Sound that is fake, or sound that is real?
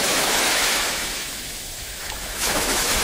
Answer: fake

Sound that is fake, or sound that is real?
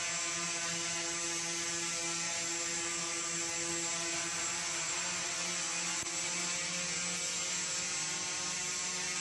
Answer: real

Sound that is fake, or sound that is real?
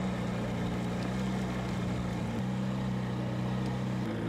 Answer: real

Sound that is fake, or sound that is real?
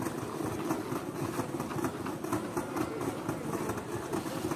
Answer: real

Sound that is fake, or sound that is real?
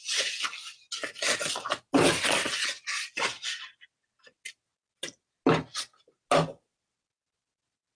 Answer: real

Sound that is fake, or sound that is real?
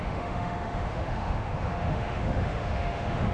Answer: fake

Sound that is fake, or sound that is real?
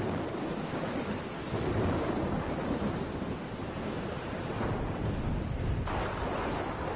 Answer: real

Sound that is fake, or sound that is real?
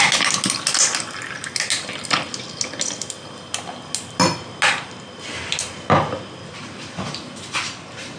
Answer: real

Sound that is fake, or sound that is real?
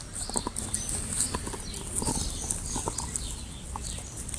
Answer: real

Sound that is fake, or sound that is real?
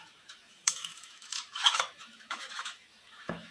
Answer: fake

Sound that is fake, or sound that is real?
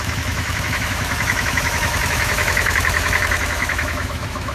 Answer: fake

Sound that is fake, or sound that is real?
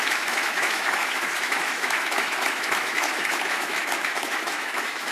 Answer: fake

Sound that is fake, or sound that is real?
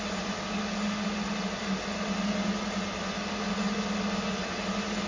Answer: real